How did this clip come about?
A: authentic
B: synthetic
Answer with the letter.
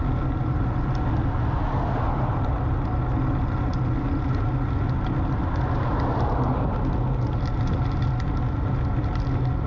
A